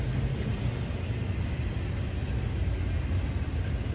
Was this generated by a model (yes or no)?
no